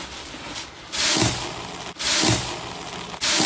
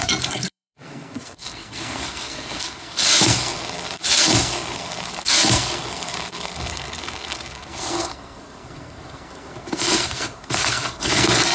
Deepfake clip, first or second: second